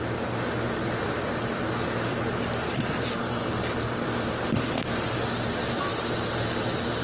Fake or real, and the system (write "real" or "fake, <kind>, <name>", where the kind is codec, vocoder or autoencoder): real